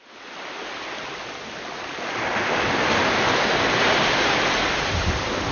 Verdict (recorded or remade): recorded